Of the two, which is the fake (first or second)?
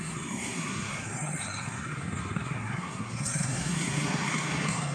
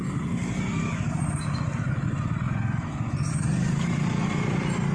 first